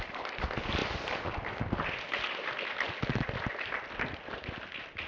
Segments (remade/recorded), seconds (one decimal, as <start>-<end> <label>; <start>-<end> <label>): 0.0-5.1 recorded